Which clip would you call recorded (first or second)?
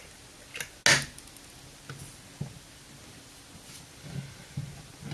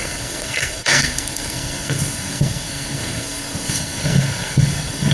first